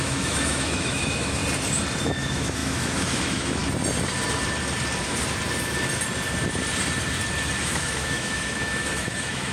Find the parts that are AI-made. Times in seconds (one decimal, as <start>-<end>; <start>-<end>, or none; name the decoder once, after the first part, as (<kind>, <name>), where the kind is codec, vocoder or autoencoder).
0.0-1.4 (autoencoder, DAC-VAE); 2.0-3.6; 7.6-9.5